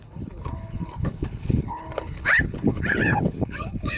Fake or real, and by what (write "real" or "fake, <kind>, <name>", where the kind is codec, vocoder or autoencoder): fake, codec, HILCodec